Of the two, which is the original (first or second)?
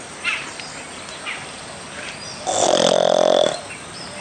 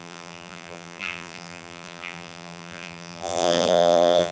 first